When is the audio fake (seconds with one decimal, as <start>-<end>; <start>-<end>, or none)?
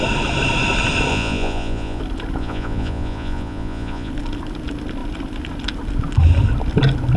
1.1-2.0; 2.4-4.1